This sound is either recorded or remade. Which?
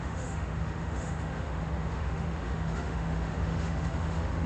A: remade